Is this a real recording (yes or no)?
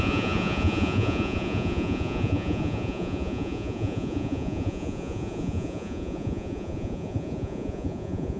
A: no